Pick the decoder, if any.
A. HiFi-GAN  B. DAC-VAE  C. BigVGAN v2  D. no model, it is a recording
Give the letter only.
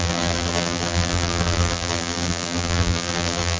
C